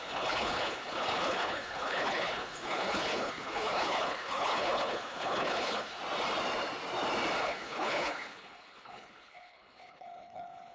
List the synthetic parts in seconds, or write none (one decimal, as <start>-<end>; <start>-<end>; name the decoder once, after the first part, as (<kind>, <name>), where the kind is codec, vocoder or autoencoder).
0.0-6.0 (codec, HILCodec); 7.4-10.7